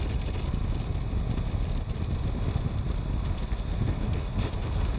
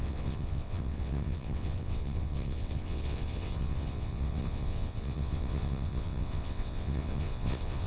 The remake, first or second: second